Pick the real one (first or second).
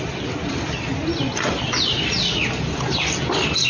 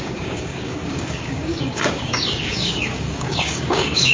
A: first